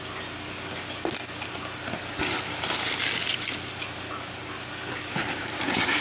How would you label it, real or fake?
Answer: real